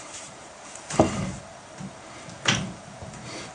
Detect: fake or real fake